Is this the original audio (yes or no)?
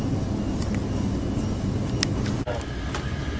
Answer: yes